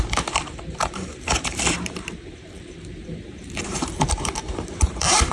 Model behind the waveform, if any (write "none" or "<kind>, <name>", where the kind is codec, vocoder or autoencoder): vocoder, BigVGAN v2